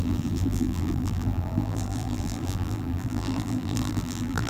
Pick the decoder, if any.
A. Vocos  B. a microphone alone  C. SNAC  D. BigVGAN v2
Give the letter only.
D